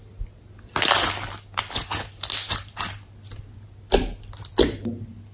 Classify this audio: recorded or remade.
recorded